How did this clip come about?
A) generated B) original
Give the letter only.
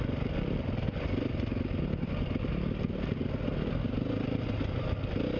B